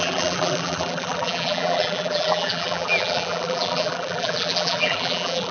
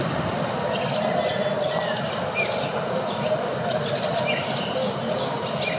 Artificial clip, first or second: first